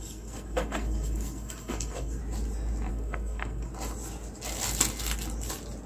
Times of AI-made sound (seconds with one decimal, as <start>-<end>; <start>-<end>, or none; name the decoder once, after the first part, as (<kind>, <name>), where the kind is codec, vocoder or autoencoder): 0.0-2.2 (codec, SNAC); 2.9-3.7